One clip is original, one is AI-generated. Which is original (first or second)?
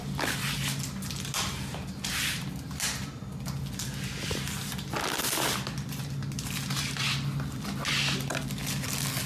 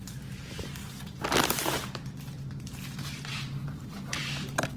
first